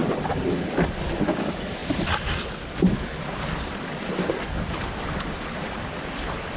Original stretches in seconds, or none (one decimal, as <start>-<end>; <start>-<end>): 0.0-0.5; 1.8-5.6